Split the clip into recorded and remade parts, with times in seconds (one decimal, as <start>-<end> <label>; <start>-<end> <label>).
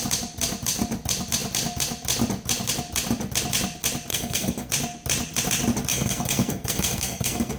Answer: 0.0-4.1 recorded; 4.1-4.7 remade; 4.7-5.9 recorded; 5.9-7.6 remade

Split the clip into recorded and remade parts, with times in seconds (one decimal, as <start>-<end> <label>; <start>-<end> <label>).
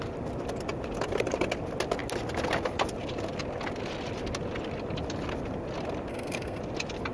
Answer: 0.0-6.1 recorded; 6.1-6.6 remade; 6.6-7.1 recorded